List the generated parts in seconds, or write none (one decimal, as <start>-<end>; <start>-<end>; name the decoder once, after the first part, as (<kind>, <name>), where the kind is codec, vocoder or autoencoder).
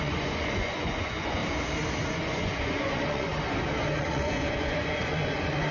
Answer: 0.0-1.4 (vocoder, Vocos); 2.1-3.3; 4.0-5.7